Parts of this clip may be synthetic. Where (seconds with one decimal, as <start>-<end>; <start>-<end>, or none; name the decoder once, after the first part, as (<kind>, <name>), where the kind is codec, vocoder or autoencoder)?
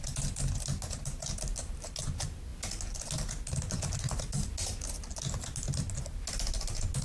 none